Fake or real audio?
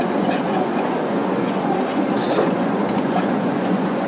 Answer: fake